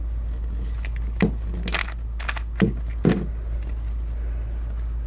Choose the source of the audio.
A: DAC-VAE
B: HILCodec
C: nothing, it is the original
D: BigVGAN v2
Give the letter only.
C